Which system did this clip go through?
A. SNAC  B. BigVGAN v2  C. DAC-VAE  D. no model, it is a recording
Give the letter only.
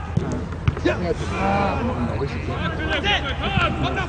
D